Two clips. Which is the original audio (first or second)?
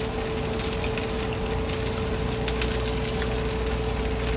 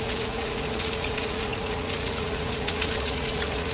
first